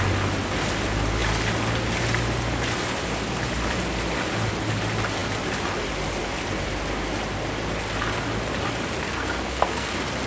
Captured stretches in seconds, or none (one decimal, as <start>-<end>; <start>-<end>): 0.0-9.0; 9.9-10.3